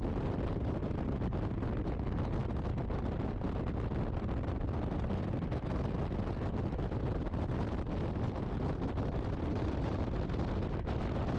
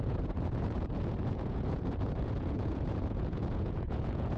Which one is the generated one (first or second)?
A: second